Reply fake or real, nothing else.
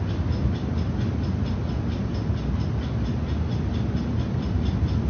real